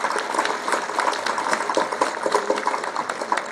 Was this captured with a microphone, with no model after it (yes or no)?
yes